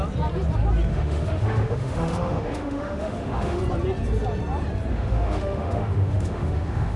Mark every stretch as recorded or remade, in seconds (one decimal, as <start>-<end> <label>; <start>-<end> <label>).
0.0-0.9 recorded; 0.9-3.6 remade; 3.6-4.9 recorded; 4.9-7.0 remade